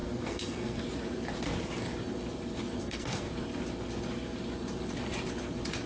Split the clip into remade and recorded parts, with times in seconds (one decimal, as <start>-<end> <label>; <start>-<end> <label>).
0.0-0.8 remade; 0.8-2.8 recorded; 2.8-3.3 remade; 3.3-5.9 recorded